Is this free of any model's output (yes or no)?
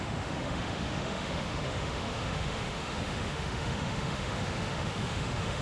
no